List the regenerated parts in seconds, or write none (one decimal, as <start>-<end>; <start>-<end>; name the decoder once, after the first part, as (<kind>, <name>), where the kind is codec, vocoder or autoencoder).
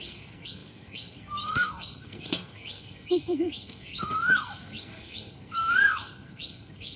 0.0-7.0 (codec, SNAC)